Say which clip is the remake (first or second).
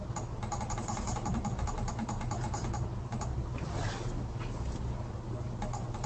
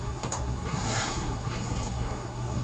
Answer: second